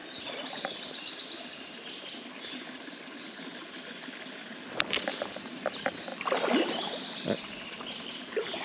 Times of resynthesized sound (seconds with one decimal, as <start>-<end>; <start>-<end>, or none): 5.1-6.1; 7.8-8.6